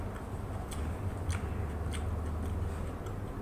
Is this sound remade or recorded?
recorded